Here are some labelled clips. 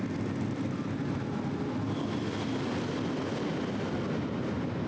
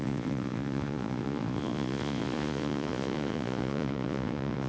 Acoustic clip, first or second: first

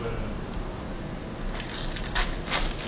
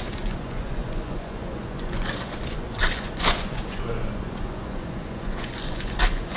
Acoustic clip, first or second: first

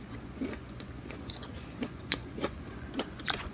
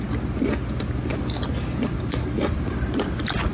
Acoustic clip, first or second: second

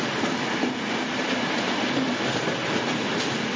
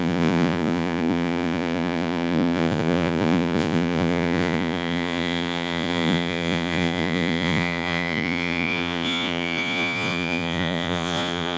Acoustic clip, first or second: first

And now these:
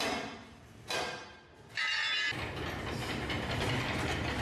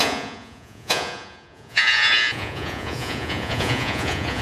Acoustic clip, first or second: first